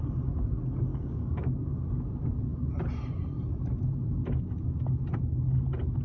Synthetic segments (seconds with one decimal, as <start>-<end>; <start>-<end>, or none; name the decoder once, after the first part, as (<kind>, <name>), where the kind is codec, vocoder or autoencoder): 0.9-1.8 (codec, DAC)